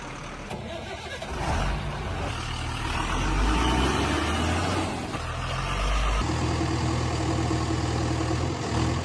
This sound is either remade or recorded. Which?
recorded